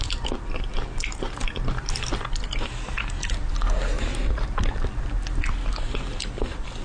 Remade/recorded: recorded